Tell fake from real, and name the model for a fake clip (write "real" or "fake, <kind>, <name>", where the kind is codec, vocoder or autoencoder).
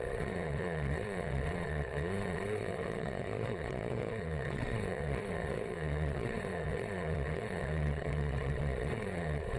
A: fake, vocoder, WaveNeXt